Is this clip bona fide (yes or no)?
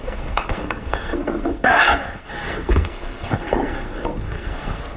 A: no